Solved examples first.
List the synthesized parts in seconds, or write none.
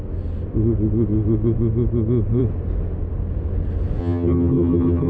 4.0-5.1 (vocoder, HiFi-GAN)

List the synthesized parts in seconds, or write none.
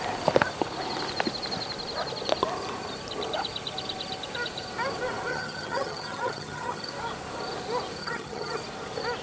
5.3-6.9 (vocoder, HiFi-GAN); 8.0-8.6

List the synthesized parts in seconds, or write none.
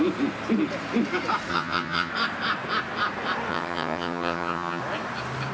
1.5-2.1 (vocoder, HiFi-GAN); 3.5-4.8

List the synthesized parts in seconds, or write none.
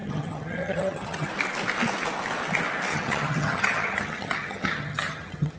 0.0-1.3 (vocoder, HiFi-GAN); 2.9-5.6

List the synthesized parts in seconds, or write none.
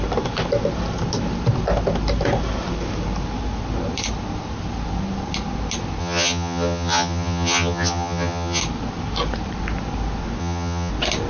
6.0-8.6 (vocoder, HiFi-GAN); 10.4-10.9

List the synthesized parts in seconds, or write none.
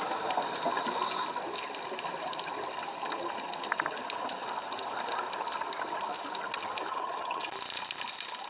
6.9-7.5 (vocoder, HiFi-GAN)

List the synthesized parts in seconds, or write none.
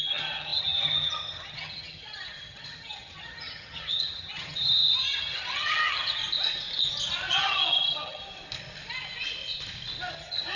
0.0-6.2 (vocoder, HiFi-GAN); 7.3-8.2; 10.1-10.6